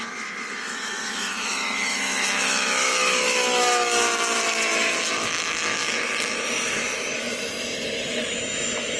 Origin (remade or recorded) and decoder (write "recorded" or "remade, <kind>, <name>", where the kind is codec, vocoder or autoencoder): remade, autoencoder, DAC-VAE